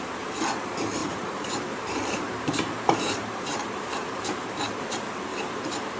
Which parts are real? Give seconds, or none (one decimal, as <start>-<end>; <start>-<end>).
0.0-1.0; 4.6-5.3